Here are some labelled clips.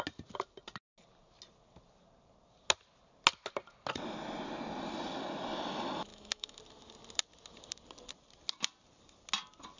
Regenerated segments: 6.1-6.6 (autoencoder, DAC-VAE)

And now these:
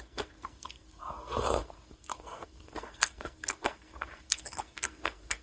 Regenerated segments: 0.0-5.4 (codec, SNAC)

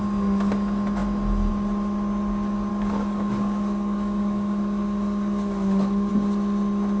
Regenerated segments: 2.7-6.1 (codec, DAC)

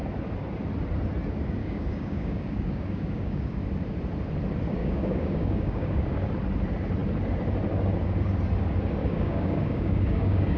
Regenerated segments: 1.6-3.6 (codec, DAC); 4.8-6.3; 9.0-10.6

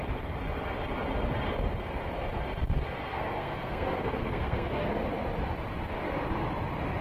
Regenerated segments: 3.1-4.9 (codec, SNAC)

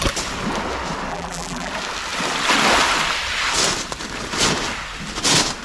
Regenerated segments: 1.1-1.7 (vocoder, BigVGAN v2)

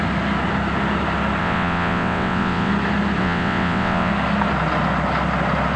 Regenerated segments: 1.4-2.7 (vocoder, WaveNeXt); 3.2-4.1